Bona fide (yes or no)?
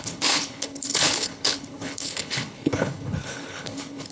no